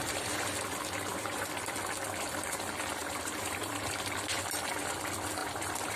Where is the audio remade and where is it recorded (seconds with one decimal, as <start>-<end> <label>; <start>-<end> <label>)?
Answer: 0.0-1.1 recorded; 1.1-1.6 remade; 1.6-3.0 recorded; 3.0-3.9 remade; 3.9-5.4 recorded; 5.4-6.0 remade